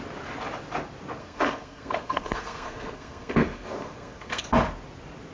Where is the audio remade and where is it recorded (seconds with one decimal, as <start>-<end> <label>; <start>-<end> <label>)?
0.0-1.2 recorded; 1.2-4.4 remade; 4.4-5.3 recorded